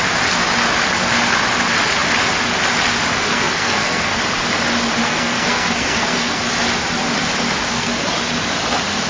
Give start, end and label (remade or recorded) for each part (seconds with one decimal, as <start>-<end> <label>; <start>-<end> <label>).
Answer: 0.0-3.3 recorded; 3.3-4.2 remade; 4.2-5.0 recorded; 5.0-6.4 remade; 6.4-7.6 recorded; 7.6-8.1 remade; 8.1-9.1 recorded